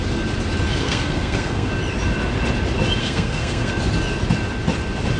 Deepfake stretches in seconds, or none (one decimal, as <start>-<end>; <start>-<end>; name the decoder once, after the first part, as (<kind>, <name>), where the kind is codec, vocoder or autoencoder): 0.8-1.7 (codec, SNAC); 3.0-3.8